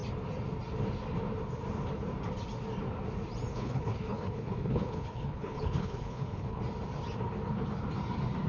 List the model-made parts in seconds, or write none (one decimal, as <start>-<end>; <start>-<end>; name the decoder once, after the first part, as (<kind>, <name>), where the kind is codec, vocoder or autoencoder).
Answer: 3.5-6.6 (codec, HILCodec)